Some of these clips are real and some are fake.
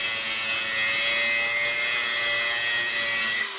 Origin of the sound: real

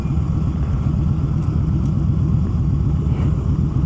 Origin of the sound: fake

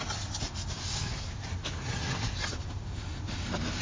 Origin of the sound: real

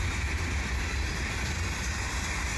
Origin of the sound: fake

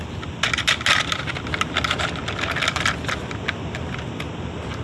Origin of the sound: real